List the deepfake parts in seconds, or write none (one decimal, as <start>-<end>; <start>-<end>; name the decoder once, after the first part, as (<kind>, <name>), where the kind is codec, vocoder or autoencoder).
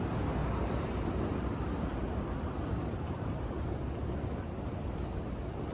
0.4-3.8 (vocoder, BigVGAN v2)